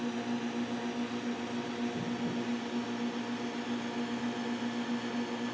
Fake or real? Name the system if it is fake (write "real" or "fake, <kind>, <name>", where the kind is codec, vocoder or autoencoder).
real